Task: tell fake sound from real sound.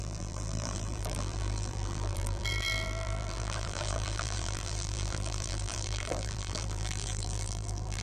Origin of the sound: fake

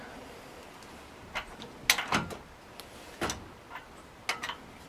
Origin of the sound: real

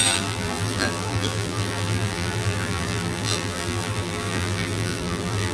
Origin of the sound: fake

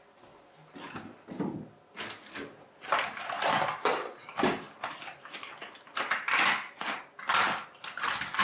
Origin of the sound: real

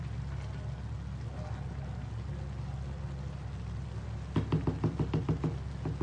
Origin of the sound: real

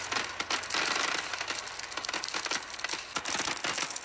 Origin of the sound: real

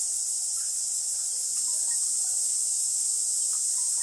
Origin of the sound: real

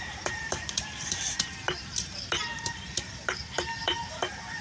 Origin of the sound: fake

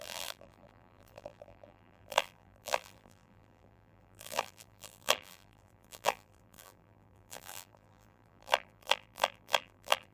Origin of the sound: fake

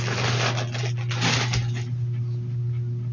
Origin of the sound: real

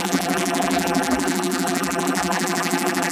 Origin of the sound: fake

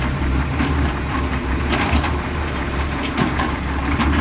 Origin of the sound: fake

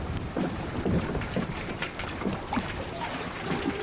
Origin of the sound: fake